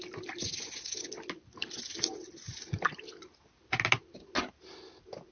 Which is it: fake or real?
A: real